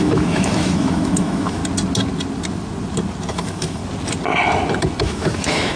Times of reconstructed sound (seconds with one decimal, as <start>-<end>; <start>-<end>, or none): 0.0-1.6; 3.3-3.8; 5.0-5.8